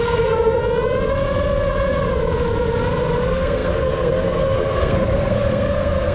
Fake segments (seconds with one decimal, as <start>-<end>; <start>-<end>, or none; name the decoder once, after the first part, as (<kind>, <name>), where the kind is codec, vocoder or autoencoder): 0.0-0.6 (codec, SNAC); 3.2-6.1